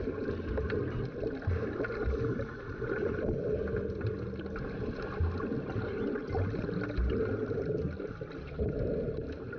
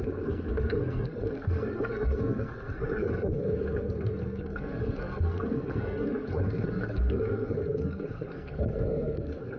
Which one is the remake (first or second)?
second